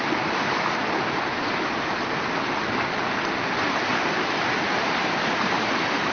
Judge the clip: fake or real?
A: real